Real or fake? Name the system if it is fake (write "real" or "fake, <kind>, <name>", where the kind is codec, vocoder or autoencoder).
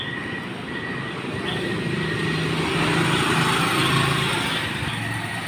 real